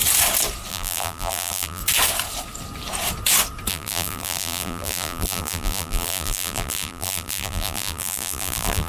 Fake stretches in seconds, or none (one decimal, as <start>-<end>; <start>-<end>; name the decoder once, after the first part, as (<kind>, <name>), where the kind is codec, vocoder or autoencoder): 0.7-1.8 (vocoder, BigVGAN v2); 3.7-8.9